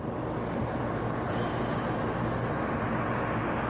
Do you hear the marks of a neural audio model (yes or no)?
no